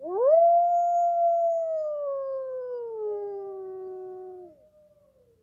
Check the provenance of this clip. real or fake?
real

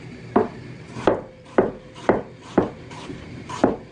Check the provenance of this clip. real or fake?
fake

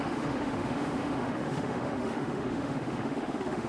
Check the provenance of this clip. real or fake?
fake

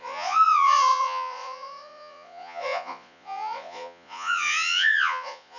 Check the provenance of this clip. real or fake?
fake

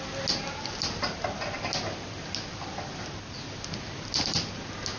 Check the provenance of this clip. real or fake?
real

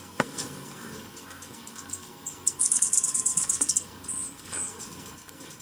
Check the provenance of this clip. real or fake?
fake